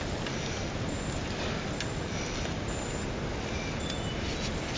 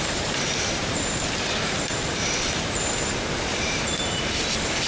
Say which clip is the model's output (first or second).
second